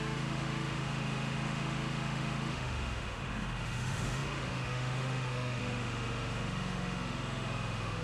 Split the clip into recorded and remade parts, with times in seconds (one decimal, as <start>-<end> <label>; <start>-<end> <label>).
0.0-8.0 remade